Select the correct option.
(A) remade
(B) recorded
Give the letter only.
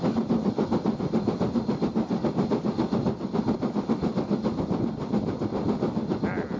B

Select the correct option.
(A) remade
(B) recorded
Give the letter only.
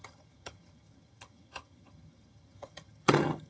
A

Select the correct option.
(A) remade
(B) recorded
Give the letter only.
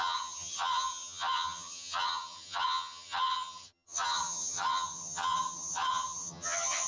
A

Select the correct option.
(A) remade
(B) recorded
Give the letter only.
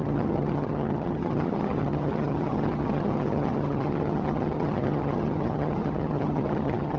A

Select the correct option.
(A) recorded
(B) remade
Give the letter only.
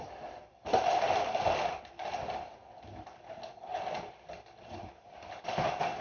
A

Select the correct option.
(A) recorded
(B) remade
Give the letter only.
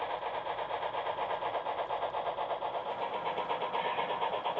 A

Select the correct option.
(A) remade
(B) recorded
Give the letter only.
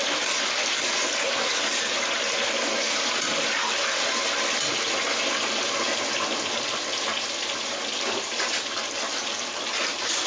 B